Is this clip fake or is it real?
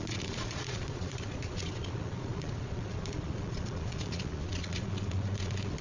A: fake